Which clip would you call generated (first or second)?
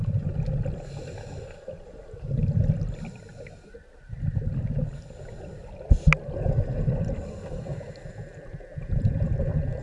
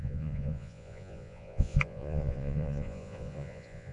second